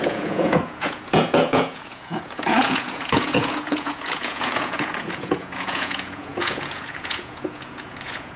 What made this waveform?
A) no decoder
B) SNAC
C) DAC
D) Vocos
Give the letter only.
D